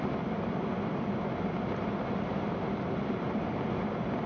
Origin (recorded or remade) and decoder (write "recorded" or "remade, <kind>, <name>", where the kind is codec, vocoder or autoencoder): recorded